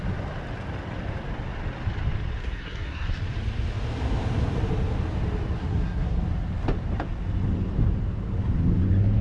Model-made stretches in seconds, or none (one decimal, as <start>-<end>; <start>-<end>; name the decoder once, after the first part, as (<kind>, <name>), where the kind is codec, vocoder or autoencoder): 2.4-3.2 (codec, SNAC); 5.6-6.2